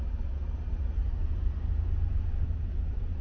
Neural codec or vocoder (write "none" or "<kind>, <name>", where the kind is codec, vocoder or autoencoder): vocoder, BigVGAN v2